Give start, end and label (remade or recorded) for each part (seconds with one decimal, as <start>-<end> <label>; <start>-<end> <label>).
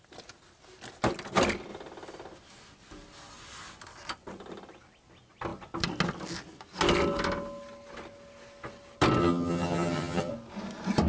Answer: 0.0-9.2 recorded; 9.2-10.3 remade; 10.3-11.1 recorded